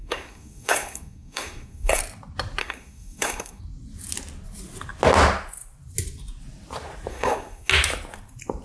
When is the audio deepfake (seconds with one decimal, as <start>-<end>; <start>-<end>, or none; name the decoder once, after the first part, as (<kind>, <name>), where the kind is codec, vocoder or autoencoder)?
0.0-2.0 (codec, SNAC); 2.6-3.6; 7.1-7.7